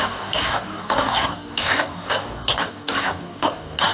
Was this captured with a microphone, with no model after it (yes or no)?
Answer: no